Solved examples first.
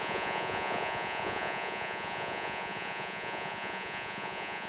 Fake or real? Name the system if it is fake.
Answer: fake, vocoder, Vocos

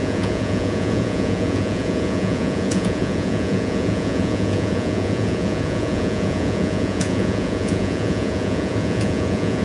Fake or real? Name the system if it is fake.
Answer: fake, vocoder, Vocos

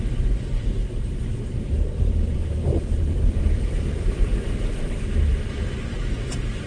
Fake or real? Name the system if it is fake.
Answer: fake, vocoder, BigVGAN v2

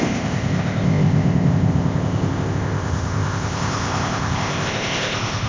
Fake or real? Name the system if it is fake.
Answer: fake, codec, ZipCodec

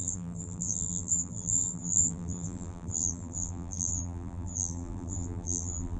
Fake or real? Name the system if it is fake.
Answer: fake, vocoder, BigVGAN v2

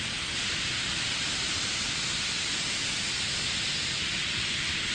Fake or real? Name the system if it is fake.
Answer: real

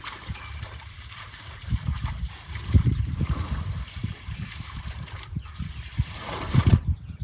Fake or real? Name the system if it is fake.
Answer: fake, vocoder, BigVGAN v2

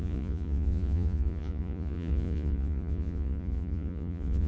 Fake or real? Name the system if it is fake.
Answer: fake, vocoder, Vocos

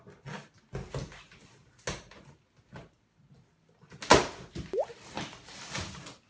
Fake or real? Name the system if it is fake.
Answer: real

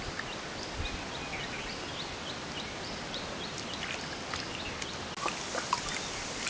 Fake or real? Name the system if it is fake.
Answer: real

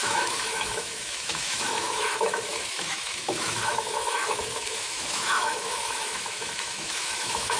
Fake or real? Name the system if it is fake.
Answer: fake, autoencoder, DAC-VAE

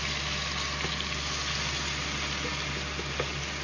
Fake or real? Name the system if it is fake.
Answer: real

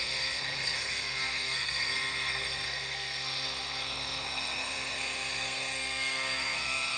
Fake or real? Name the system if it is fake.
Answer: fake, codec, SNAC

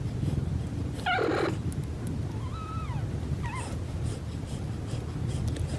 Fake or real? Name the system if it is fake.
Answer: real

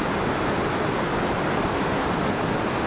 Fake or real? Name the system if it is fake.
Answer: real